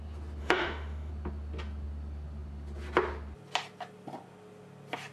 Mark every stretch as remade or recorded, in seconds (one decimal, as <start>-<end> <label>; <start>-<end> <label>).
0.0-0.4 recorded; 0.4-1.1 remade; 1.1-5.1 recorded